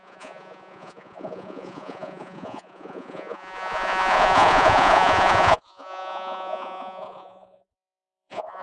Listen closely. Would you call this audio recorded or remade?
remade